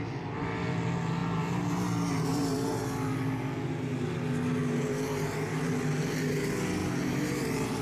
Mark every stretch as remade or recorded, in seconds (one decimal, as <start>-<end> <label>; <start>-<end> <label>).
0.0-2.3 recorded; 2.3-2.8 remade; 2.8-6.8 recorded; 6.8-7.8 remade